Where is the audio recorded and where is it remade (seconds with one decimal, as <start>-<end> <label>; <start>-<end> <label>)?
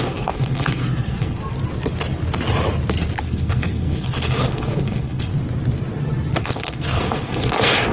0.0-1.4 remade; 1.4-3.2 recorded; 3.2-5.3 remade; 5.3-6.4 recorded; 6.4-7.9 remade